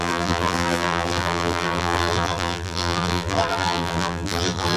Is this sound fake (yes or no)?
yes